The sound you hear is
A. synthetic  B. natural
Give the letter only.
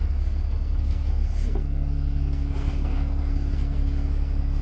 A